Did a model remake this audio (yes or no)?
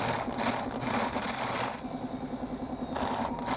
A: no